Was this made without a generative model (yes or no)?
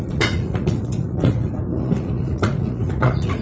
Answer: no